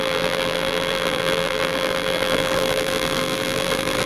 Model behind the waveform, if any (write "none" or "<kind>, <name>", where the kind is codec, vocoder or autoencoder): vocoder, BigVGAN v2